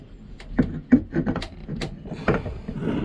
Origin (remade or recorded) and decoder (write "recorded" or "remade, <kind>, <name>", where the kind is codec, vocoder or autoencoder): remade, vocoder, BigVGAN v2